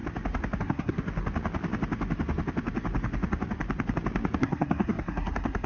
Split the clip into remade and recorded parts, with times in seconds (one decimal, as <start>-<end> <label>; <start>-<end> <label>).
0.0-0.6 recorded; 0.6-1.0 remade; 1.0-4.4 recorded; 4.4-5.7 remade